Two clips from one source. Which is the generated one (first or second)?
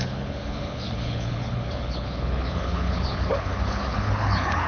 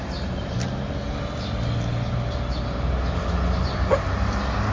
first